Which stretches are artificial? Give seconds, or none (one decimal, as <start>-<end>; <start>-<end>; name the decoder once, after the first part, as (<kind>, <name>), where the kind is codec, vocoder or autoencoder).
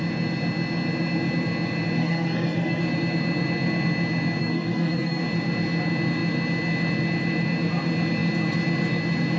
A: 2.0-2.8 (codec, SNAC); 4.4-5.2